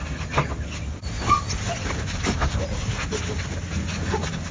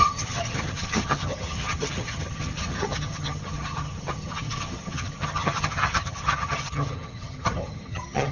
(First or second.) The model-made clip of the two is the second